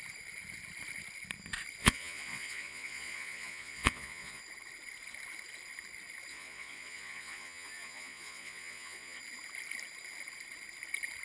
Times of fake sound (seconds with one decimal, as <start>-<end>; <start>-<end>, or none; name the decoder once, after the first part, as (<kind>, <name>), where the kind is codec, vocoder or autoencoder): 1.8-4.4 (vocoder, Vocos); 6.3-9.2